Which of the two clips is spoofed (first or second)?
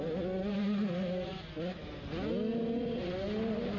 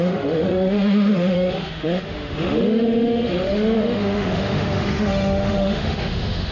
second